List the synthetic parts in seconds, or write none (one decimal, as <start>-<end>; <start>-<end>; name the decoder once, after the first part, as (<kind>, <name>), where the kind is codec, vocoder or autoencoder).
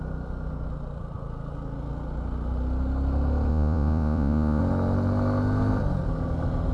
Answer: 3.5-4.6 (vocoder, Vocos)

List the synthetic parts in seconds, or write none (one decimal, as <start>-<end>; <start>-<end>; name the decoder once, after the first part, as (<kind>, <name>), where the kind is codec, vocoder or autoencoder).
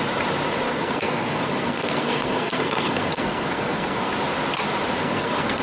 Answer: 0.7-4.1 (codec, SNAC); 5.0-5.6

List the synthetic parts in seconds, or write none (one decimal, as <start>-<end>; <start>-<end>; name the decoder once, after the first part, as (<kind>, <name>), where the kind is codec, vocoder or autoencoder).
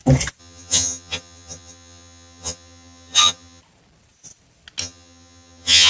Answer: 0.4-3.6 (vocoder, HiFi-GAN); 4.8-5.9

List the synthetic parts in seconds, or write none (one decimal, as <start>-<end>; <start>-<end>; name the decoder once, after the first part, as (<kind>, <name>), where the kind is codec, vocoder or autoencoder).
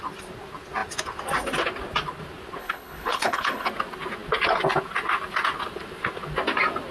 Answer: 2.6-3.7 (codec, HILCodec)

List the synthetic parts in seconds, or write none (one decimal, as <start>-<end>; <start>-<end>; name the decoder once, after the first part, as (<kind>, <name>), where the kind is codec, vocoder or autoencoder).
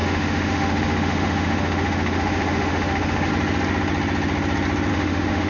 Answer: 0.0-3.3 (autoencoder, DAC-VAE); 4.9-5.5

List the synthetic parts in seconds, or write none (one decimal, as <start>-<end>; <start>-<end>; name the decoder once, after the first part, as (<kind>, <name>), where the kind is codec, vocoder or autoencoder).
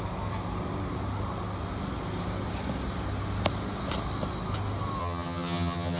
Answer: 5.0-6.0 (vocoder, HiFi-GAN)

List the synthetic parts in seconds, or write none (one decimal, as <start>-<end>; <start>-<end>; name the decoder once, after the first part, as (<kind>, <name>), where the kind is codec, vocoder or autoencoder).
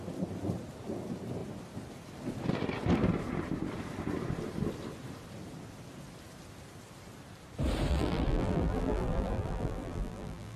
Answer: 7.9-10.6 (vocoder, BigVGAN v2)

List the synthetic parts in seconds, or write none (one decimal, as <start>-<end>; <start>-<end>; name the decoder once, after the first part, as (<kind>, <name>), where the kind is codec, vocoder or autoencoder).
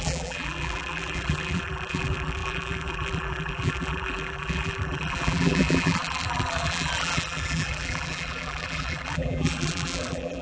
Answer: 0.0-10.4 (vocoder, BigVGAN v2)